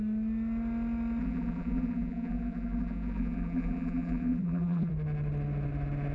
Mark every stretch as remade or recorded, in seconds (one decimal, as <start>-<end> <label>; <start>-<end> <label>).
0.0-1.2 recorded; 1.2-4.9 remade; 4.9-6.1 recorded

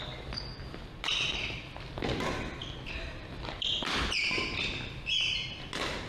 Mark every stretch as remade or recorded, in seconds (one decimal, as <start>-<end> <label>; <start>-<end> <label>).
0.0-2.6 recorded; 2.6-4.2 remade; 4.2-6.1 recorded

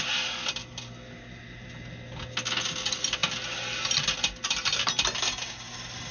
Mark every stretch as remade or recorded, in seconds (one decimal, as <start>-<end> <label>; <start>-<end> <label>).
0.0-6.1 recorded